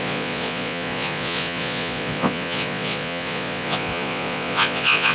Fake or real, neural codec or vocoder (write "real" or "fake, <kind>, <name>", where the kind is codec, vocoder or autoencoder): fake, vocoder, Vocos